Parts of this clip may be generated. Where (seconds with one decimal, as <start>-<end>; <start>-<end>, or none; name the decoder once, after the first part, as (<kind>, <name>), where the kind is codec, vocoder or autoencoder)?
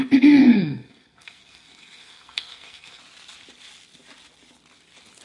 0.4-3.0 (codec, SNAC)